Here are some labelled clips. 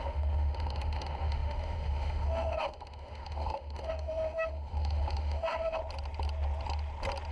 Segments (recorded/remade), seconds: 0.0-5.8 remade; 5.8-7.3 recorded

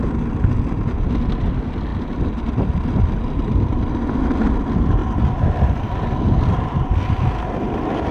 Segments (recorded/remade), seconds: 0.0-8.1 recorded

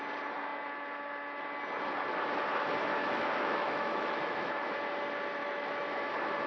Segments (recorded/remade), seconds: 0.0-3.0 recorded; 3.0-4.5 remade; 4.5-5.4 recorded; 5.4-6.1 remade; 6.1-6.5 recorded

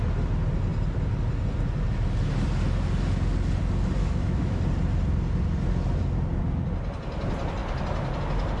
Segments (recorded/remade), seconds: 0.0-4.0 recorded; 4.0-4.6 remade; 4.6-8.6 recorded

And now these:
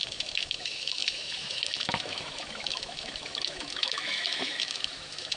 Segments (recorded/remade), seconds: 0.0-5.4 remade

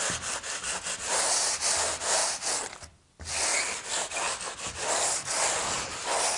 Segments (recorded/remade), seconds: 0.0-6.4 recorded

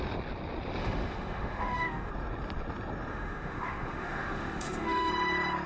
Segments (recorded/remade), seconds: 0.0-0.8 recorded; 0.8-2.1 remade; 2.1-3.1 recorded; 3.1-5.1 remade; 5.1-5.7 recorded

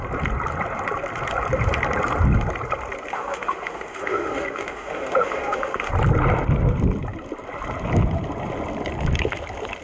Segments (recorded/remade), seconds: 0.0-3.1 recorded; 3.1-5.9 remade; 5.9-9.8 recorded